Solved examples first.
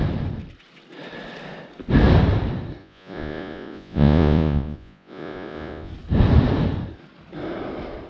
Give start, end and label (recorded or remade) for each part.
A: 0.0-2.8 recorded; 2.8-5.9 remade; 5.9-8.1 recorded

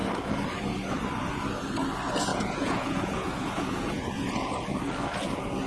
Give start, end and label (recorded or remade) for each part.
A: 0.0-2.3 recorded; 2.3-4.5 remade; 4.5-5.7 recorded

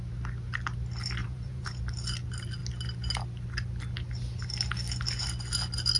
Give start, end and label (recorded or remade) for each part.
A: 0.0-1.2 recorded; 1.2-1.8 remade; 1.8-6.0 recorded

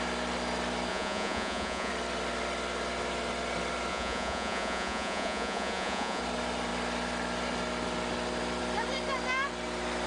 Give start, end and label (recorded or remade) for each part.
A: 0.0-0.9 recorded; 0.9-1.9 remade; 1.9-3.9 recorded; 3.9-6.2 remade; 6.2-10.1 recorded

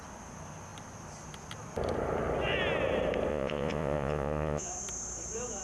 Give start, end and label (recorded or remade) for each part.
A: 0.0-3.3 recorded; 3.3-4.7 remade; 4.7-5.6 recorded

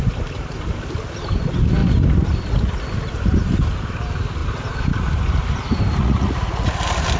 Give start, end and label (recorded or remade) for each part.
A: 0.0-6.0 recorded; 6.0-6.7 remade; 6.7-7.2 recorded

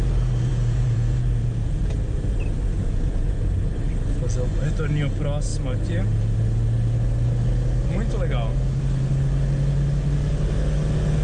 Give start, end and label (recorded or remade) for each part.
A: 0.0-0.5 recorded; 0.5-1.9 remade; 1.9-2.8 recorded; 2.8-3.5 remade; 3.5-11.2 recorded

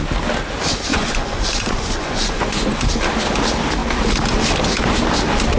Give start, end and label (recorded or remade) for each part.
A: 0.0-0.9 recorded; 0.9-2.8 remade; 2.8-5.6 recorded